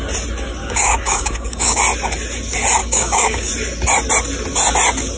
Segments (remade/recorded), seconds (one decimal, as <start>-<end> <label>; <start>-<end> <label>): 0.0-0.6 recorded; 0.6-1.8 remade; 1.8-2.8 recorded; 2.8-3.5 remade; 3.5-5.2 recorded